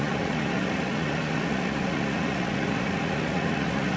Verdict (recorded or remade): remade